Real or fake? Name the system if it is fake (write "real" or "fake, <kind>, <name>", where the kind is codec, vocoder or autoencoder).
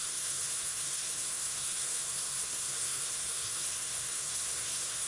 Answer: fake, codec, SNAC